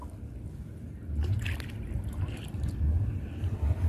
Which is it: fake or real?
real